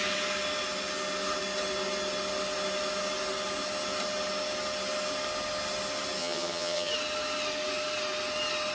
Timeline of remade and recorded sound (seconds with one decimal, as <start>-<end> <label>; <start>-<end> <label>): 0.0-6.2 recorded; 6.2-6.9 remade; 6.9-8.7 recorded